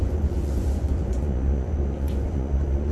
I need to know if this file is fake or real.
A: fake